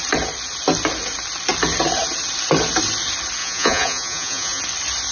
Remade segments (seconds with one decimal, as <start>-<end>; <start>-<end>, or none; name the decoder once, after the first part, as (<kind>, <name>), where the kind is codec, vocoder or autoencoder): 3.4-4.6 (vocoder, Vocos)